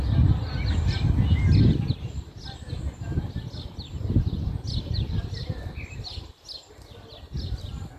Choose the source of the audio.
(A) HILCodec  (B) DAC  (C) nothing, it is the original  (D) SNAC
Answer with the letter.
C